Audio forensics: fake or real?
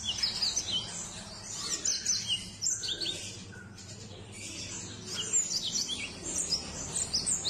real